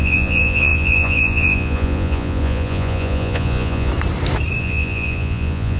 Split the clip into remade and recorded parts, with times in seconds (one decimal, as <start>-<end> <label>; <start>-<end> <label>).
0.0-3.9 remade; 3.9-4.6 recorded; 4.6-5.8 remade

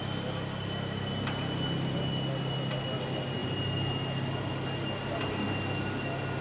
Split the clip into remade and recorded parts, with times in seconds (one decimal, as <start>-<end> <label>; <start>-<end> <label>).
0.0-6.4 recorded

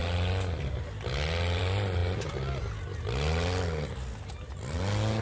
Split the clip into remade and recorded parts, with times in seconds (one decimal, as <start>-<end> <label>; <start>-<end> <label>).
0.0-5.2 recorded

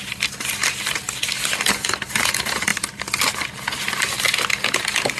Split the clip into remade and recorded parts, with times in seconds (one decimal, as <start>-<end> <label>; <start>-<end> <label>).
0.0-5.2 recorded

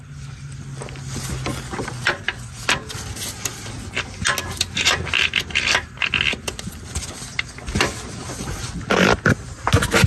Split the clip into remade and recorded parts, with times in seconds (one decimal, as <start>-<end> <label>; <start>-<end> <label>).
0.0-10.1 recorded

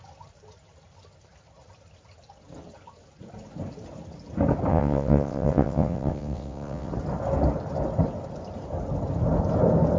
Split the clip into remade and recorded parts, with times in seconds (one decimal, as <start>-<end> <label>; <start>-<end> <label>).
0.0-4.7 recorded; 4.7-6.9 remade; 6.9-10.0 recorded

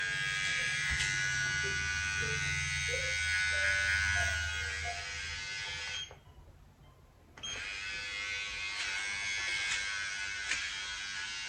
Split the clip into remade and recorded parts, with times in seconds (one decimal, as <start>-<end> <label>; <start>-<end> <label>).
0.0-0.5 recorded; 0.5-1.0 remade; 1.0-11.5 recorded